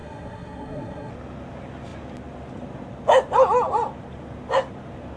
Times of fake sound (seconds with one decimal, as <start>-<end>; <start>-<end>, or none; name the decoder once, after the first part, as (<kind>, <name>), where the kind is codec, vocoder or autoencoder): 0.0-1.1 (codec, SNAC)